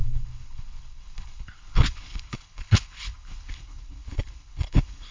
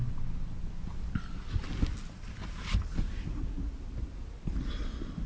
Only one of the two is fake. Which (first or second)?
first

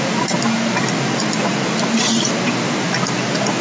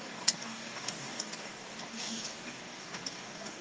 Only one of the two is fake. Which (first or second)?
second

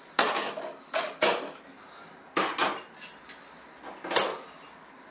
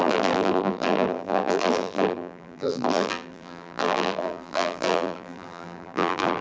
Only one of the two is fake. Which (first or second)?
second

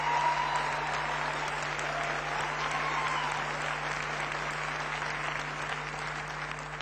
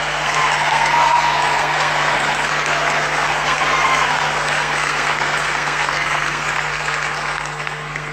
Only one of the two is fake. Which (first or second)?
second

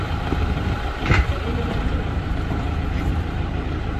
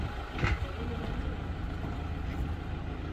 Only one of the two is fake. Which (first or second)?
first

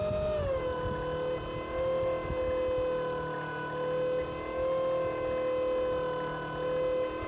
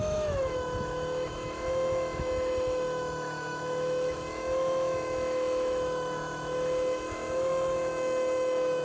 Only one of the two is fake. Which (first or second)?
second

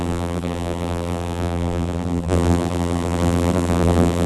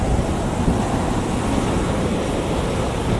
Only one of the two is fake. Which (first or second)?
first